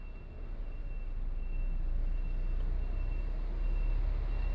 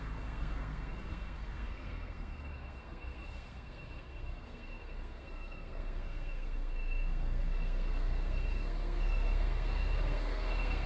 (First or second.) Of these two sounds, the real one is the first